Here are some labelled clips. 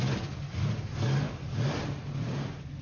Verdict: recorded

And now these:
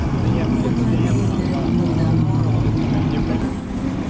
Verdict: recorded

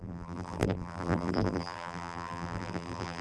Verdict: remade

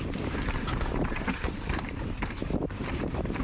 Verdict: remade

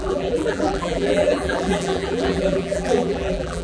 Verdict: remade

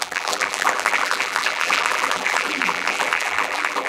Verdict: remade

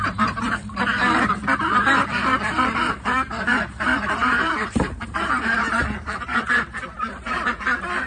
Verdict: remade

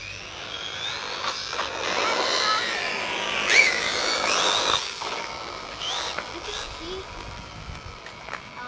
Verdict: remade